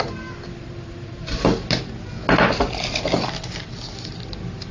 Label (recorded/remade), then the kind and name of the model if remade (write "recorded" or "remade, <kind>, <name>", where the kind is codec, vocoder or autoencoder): recorded